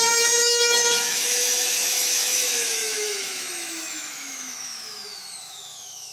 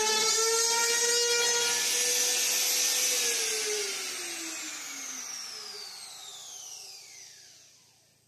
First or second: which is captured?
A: second